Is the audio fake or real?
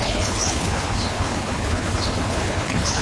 fake